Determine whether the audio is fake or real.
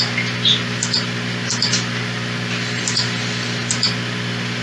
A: real